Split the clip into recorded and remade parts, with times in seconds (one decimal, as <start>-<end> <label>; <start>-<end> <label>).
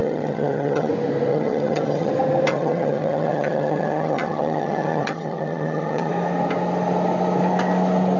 0.0-0.9 remade; 0.9-1.3 recorded; 1.3-2.1 remade; 2.1-2.5 recorded; 2.5-6.1 remade; 6.1-8.2 recorded